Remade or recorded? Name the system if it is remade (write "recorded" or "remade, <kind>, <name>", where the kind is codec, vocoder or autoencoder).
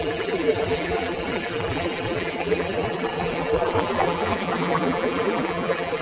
remade, vocoder, BigVGAN v2